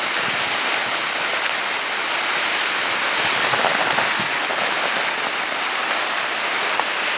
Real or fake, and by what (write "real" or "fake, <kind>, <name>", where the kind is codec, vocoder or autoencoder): real